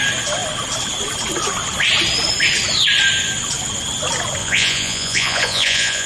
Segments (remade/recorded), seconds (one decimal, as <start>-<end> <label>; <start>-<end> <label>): 0.0-4.4 recorded; 4.4-6.1 remade